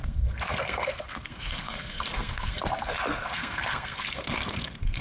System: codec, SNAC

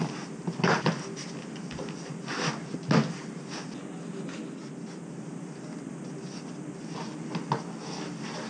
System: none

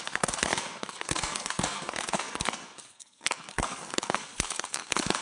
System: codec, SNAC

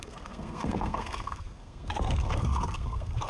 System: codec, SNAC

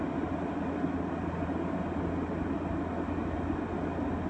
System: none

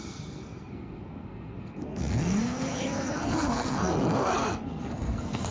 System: codec, SNAC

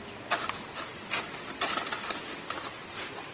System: none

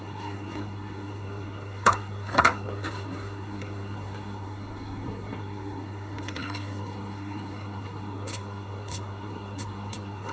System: codec, SNAC